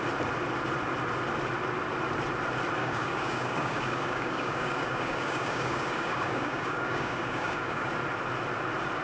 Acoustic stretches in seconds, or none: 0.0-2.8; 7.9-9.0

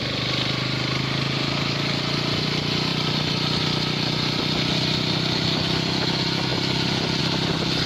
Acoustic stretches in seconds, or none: 0.0-1.4; 2.0-7.9

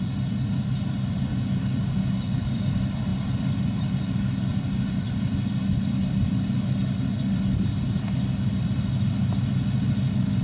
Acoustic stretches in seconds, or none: 0.0-1.3; 2.7-10.4

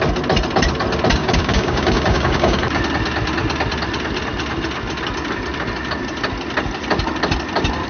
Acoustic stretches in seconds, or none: 0.0-1.2; 2.8-7.9

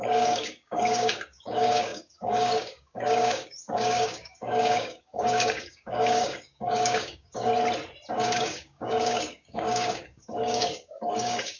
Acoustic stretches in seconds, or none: 7.5-8.1

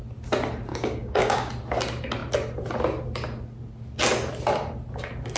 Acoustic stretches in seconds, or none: 0.0-0.7; 1.5-5.4

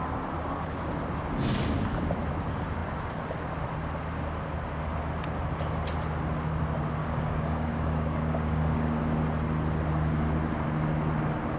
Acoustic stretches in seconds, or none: 0.0-7.0; 9.0-11.6

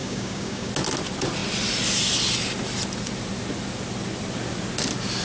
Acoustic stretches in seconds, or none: 0.7-5.2